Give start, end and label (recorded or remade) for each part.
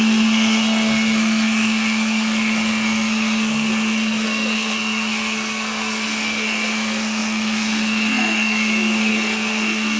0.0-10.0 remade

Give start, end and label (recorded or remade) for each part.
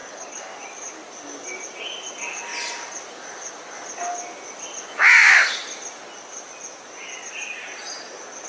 0.0-8.5 recorded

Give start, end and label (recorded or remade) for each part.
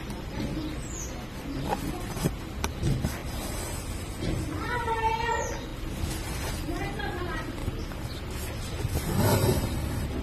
0.0-10.2 recorded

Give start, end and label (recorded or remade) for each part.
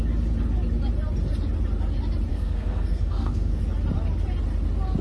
0.0-2.3 recorded; 2.3-3.6 remade; 3.6-5.0 recorded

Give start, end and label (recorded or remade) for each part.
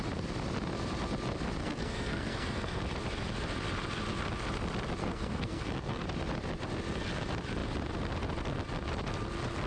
0.0-1.6 recorded; 1.6-2.8 remade; 2.8-5.0 recorded; 5.0-6.0 remade; 6.0-9.7 recorded